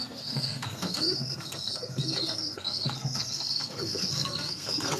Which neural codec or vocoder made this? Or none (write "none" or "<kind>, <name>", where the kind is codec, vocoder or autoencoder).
codec, SNAC